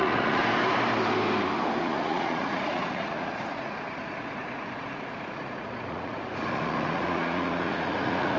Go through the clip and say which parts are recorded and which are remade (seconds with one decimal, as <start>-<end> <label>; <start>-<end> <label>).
0.0-0.4 remade; 0.4-1.8 recorded; 1.8-8.4 remade